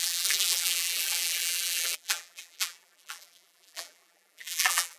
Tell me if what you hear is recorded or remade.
remade